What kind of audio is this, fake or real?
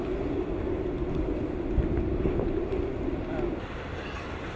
real